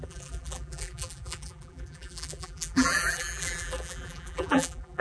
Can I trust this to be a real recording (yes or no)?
no